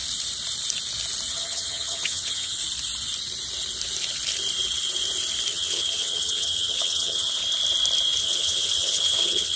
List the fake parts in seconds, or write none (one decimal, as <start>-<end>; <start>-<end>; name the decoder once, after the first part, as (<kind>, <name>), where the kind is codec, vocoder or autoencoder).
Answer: 1.3-2.6 (vocoder, HiFi-GAN); 5.5-7.4; 8.2-9.6